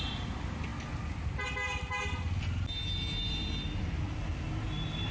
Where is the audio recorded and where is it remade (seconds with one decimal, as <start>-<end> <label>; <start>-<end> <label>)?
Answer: 0.0-5.1 recorded